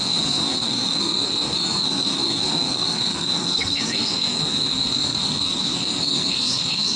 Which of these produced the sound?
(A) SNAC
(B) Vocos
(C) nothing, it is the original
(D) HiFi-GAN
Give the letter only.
A